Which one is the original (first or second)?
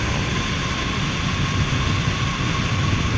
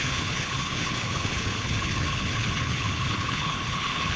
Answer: first